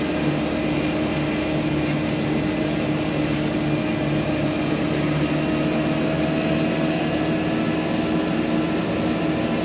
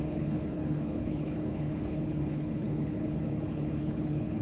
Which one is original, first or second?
first